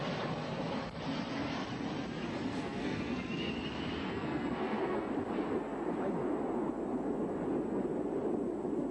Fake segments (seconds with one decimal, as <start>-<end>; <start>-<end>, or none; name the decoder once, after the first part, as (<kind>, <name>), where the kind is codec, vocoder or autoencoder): 2.5-3.5 (codec, SNAC); 4.0-5.1